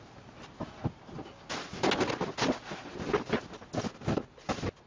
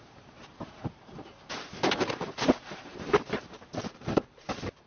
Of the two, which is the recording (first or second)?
first